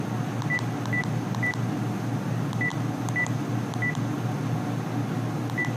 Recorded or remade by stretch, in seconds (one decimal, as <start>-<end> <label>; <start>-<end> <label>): 0.0-5.8 recorded